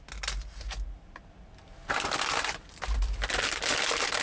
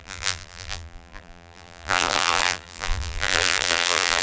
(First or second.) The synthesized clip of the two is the second